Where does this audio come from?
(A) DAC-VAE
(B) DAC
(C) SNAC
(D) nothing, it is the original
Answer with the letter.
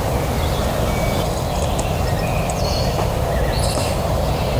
D